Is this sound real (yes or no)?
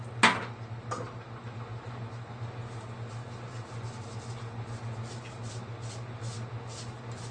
yes